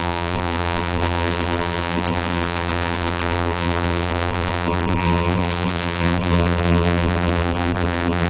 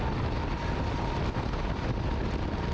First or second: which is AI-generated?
first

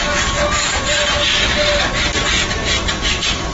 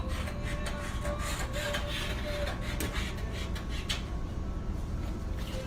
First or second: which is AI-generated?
first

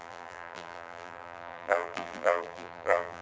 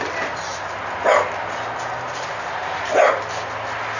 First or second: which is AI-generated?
first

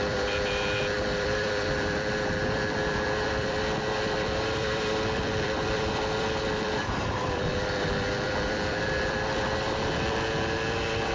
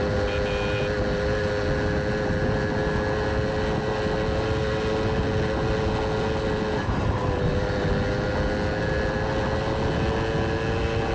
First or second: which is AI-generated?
first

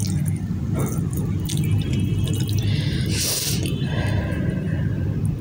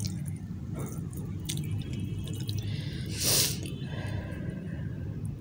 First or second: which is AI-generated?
second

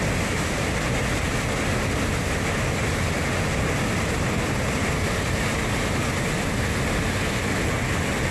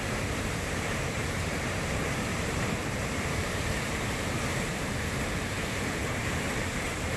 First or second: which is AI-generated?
second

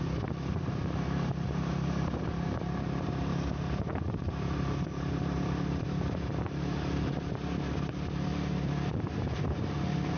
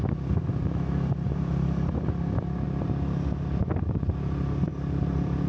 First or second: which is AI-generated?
first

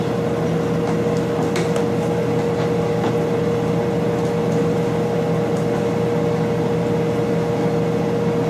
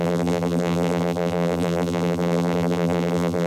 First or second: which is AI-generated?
second